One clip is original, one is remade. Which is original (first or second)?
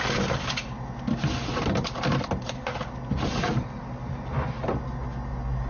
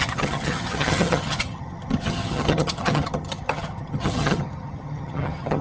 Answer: first